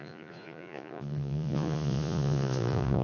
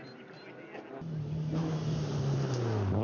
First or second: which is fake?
first